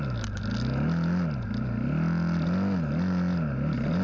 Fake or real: real